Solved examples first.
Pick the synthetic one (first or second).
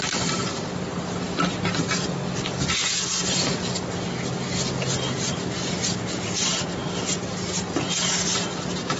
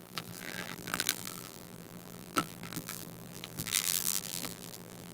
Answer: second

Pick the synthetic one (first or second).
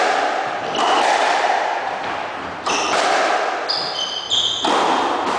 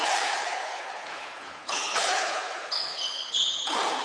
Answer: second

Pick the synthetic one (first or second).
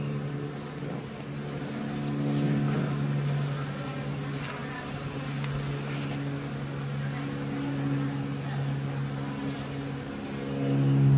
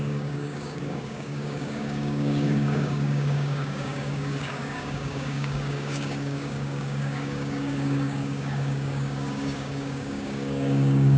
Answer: second